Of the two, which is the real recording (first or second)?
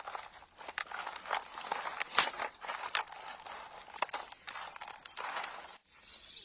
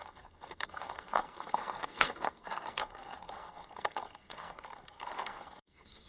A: first